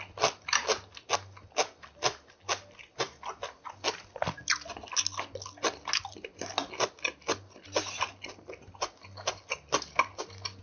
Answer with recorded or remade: recorded